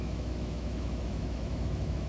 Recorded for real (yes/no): no